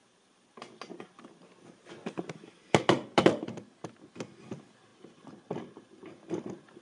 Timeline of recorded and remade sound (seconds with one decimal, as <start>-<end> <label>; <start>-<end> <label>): 0.0-6.8 recorded